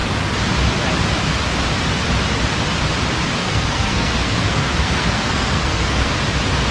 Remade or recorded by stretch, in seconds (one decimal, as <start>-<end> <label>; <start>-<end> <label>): 0.0-3.4 recorded; 3.4-6.1 remade; 6.1-6.7 recorded

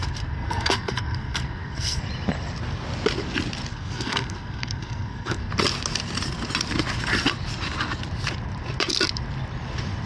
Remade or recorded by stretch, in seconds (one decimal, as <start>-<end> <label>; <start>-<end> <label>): 0.0-2.0 remade; 2.0-3.7 recorded; 3.7-5.5 remade; 5.5-10.1 recorded

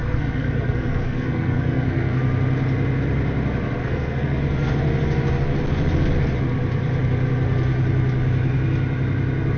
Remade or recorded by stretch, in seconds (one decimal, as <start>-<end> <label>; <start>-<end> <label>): 0.0-2.2 remade; 2.2-3.8 recorded; 3.8-4.4 remade; 4.4-9.6 recorded

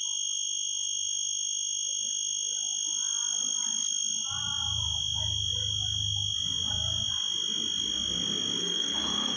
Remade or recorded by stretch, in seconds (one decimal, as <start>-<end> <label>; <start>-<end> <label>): 0.0-8.6 recorded; 8.6-9.4 remade

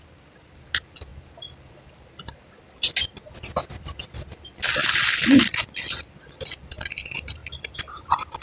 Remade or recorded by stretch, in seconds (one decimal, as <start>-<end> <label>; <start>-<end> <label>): 0.0-8.4 recorded

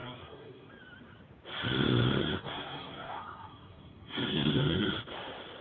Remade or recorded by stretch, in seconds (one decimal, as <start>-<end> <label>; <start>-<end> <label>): 0.0-0.7 remade; 0.7-2.2 recorded; 2.2-4.9 remade; 4.9-5.6 recorded

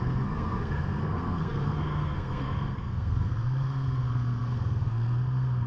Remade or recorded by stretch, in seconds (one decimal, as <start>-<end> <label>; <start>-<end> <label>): 0.0-5.7 remade

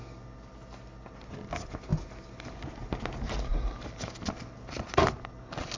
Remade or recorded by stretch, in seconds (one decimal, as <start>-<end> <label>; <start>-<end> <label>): 0.0-5.8 recorded